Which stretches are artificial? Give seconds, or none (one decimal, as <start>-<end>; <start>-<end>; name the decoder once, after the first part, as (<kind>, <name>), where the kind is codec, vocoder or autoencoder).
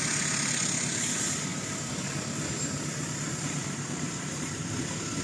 1.5-4.6 (vocoder, BigVGAN v2)